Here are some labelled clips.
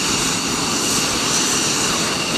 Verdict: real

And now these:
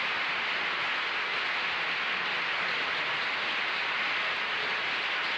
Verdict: real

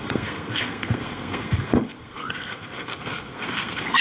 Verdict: fake